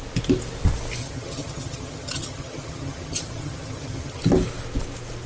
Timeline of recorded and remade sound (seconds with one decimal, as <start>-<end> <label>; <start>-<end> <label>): 0.0-1.0 recorded; 1.0-4.2 remade; 4.2-5.3 recorded

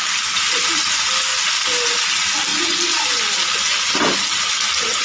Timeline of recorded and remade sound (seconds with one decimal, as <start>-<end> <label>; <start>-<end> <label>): 0.0-5.0 recorded